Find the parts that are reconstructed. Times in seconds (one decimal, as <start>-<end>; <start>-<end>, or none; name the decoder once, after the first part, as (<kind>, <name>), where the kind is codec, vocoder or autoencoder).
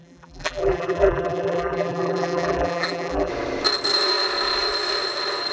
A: 0.0-3.3 (vocoder, BigVGAN v2)